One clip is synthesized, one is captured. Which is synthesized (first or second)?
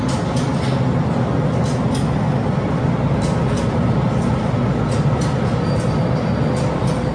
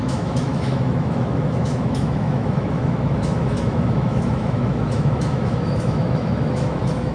second